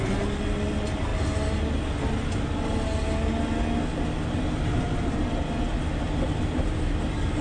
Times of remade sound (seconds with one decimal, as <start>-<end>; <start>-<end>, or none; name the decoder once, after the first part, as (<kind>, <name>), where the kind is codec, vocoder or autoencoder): none